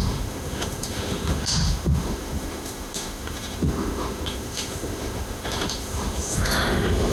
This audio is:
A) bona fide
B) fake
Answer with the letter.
B